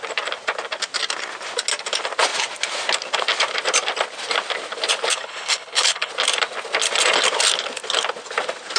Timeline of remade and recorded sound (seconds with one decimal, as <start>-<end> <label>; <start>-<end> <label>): 0.0-5.1 recorded; 5.1-6.1 remade; 6.1-8.8 recorded